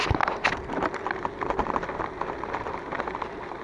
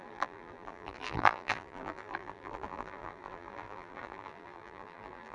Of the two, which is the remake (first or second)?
second